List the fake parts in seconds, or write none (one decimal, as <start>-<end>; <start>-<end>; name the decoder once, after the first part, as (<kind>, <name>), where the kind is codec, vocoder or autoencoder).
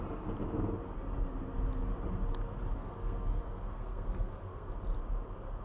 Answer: 2.8-4.7 (codec, SNAC)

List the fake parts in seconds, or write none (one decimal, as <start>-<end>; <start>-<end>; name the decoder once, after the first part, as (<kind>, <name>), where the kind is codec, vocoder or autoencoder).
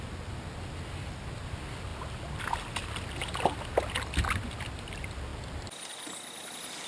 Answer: none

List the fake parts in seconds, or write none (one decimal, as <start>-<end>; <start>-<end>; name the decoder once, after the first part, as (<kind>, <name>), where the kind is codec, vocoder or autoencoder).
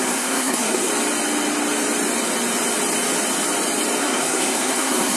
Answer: 0.0-0.9 (codec, SNAC); 4.0-5.2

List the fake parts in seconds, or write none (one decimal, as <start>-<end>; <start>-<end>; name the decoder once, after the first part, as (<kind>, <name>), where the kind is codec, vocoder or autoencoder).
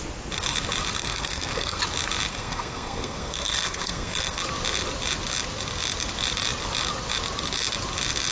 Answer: 1.0-1.8 (codec, SNAC); 2.3-4.4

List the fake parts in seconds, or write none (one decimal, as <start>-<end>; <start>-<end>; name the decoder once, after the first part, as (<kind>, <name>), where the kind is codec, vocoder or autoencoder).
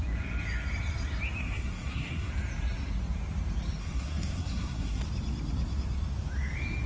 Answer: 1.4-2.3 (codec, SNAC); 3.8-5.0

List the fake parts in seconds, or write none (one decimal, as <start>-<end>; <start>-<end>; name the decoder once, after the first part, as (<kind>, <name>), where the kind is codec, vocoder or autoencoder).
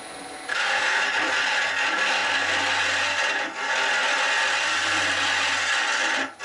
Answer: 0.5-1.0 (codec, SNAC)